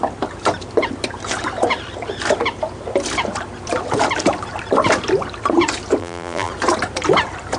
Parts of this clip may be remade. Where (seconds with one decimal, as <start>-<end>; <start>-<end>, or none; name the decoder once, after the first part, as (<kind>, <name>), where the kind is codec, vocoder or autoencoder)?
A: 6.0-6.5 (vocoder, BigVGAN v2)